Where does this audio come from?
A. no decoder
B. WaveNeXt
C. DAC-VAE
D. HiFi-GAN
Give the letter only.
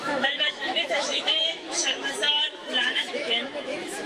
C